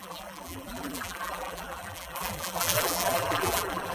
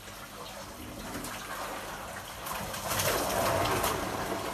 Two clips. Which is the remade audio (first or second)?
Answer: first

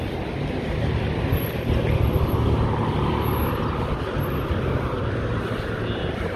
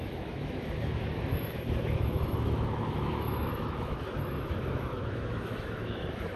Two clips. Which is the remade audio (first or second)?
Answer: second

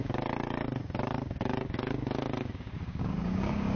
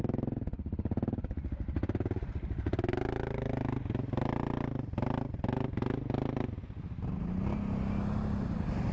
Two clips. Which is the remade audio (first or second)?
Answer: first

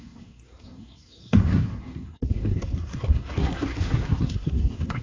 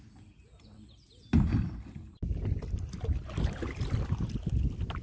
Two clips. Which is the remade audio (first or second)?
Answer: first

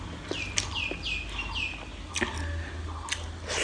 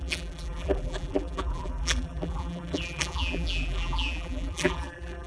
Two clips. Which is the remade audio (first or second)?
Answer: second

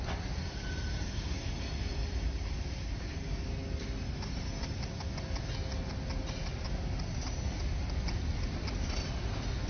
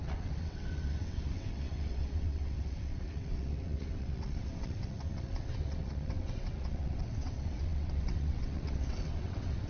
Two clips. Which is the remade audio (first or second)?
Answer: second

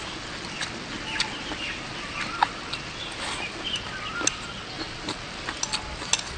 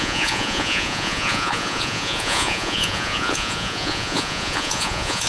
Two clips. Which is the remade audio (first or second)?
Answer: second